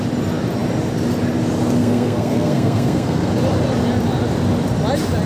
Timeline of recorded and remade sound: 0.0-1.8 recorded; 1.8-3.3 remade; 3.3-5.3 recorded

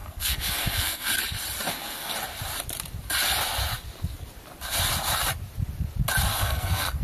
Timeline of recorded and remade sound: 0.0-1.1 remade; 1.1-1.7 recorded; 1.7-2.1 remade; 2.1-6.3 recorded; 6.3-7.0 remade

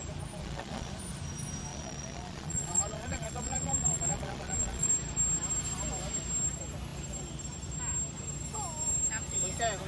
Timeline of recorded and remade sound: 0.0-0.4 recorded; 0.4-0.9 remade; 0.9-1.7 recorded; 1.7-4.9 remade; 4.9-9.9 recorded

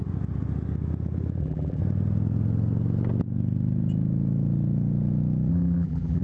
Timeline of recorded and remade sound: 0.0-1.4 recorded; 1.4-1.8 remade; 1.8-5.5 recorded; 5.5-6.2 remade

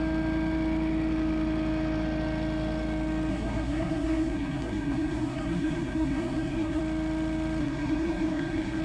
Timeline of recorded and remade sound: 0.0-3.3 recorded; 3.3-6.8 remade; 6.8-7.6 recorded; 7.6-8.8 remade

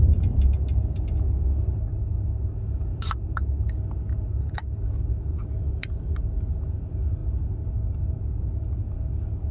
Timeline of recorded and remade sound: 0.0-2.9 recorded; 2.9-6.2 remade; 6.2-9.5 recorded

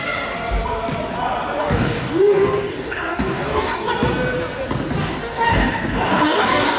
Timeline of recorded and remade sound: 0.0-1.6 recorded; 1.6-3.9 remade; 3.9-5.0 recorded; 5.0-6.8 remade